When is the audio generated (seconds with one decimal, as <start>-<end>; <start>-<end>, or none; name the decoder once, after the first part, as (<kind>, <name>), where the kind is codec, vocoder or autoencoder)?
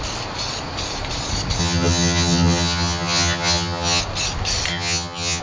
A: 1.6-4.0 (vocoder, HiFi-GAN); 4.7-5.4